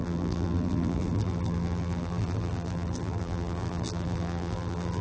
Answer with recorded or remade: remade